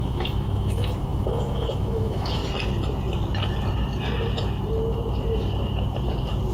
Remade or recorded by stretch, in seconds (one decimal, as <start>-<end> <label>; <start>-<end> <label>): 0.0-2.4 remade; 2.4-6.5 recorded